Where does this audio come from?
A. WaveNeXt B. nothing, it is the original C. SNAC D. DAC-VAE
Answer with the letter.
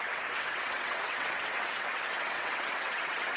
A